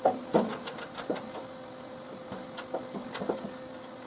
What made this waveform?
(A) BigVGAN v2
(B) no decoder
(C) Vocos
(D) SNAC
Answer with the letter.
B